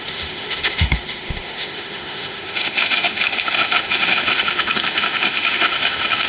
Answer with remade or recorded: remade